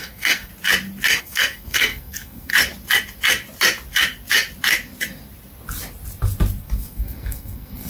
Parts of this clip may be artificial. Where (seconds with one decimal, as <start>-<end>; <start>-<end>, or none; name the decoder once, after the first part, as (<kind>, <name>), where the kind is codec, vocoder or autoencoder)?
0.0-0.5 (codec, SNAC); 1.2-2.5; 6.6-7.9